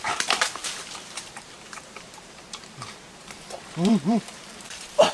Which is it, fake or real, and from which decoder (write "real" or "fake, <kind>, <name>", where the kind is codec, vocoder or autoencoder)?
fake, vocoder, BigVGAN v2